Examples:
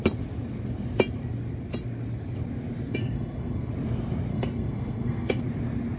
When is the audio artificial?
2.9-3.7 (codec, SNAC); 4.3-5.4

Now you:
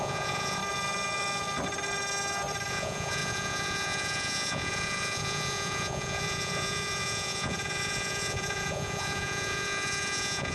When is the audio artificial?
0.0-0.6 (vocoder, Vocos); 2.7-10.5

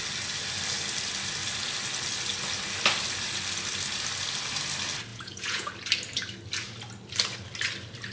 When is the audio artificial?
5.1-5.7 (vocoder, Vocos)

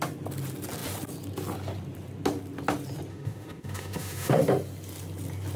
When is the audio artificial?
3.1-4.4 (autoencoder, DAC-VAE)